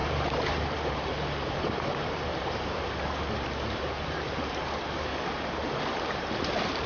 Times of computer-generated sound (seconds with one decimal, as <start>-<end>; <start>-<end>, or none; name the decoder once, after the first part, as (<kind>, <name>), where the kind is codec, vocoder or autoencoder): 0.0-5.1 (vocoder, BigVGAN v2); 6.0-6.9